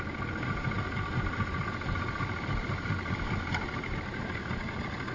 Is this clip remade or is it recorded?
recorded